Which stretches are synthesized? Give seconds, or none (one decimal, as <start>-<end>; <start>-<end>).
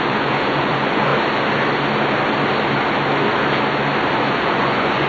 0.0-1.1; 4.2-5.1